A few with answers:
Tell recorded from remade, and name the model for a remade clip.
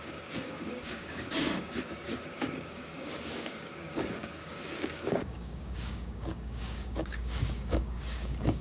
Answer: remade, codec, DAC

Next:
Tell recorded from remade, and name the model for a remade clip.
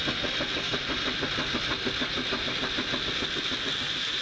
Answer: recorded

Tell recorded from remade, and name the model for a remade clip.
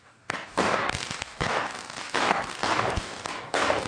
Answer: remade, codec, DAC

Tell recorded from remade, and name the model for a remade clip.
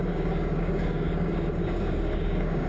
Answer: remade, codec, DAC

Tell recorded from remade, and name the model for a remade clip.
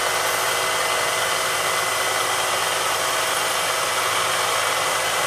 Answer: recorded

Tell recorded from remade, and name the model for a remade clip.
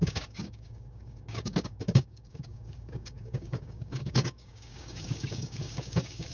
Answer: remade, codec, DAC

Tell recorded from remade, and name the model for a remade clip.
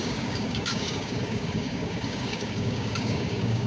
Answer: remade, codec, DAC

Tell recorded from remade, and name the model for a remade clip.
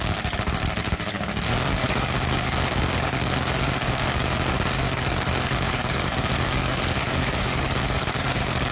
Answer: remade, codec, DAC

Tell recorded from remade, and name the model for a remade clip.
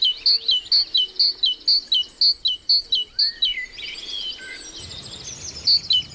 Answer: recorded